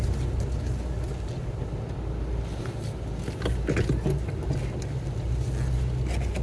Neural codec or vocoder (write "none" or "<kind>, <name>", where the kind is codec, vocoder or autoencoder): none